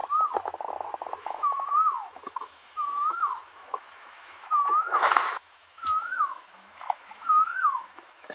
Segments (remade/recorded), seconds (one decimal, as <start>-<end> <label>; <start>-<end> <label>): 0.0-1.2 recorded; 1.2-8.3 remade